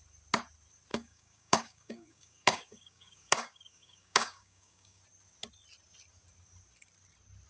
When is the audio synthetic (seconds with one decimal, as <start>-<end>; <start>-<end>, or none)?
0.9-5.0